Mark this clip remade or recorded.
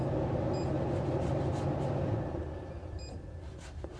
recorded